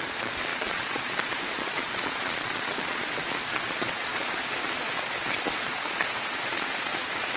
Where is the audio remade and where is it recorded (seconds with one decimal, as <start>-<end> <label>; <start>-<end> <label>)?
0.0-7.4 remade